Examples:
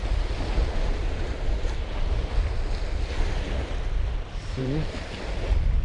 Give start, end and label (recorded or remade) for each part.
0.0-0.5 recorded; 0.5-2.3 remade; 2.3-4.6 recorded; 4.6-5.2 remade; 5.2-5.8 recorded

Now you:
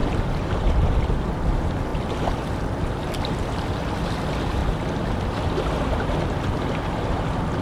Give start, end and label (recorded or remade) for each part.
0.0-0.5 recorded; 0.5-1.9 remade; 1.9-2.8 recorded; 2.8-4.6 remade; 4.6-5.2 recorded; 5.2-7.6 remade

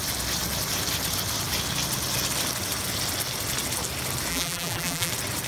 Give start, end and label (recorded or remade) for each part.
0.0-4.3 recorded; 4.3-5.1 remade; 5.1-5.5 recorded

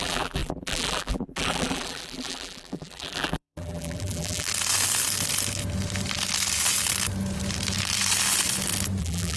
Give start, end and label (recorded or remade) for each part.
0.0-4.5 remade; 4.5-9.0 recorded; 9.0-9.4 remade

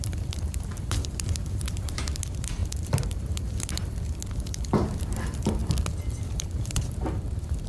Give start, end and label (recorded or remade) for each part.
0.0-5.6 remade; 5.6-6.2 recorded; 6.2-7.7 remade

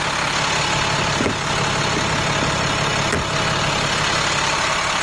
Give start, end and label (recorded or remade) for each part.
0.0-5.0 recorded

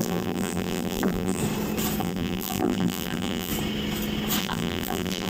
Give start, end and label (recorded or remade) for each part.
0.0-1.4 remade; 1.4-2.0 recorded; 2.0-3.5 remade; 3.5-4.4 recorded; 4.4-5.3 remade

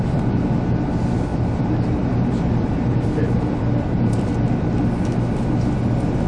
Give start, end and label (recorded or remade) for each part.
0.0-1.3 recorded; 1.3-4.3 remade; 4.3-6.3 recorded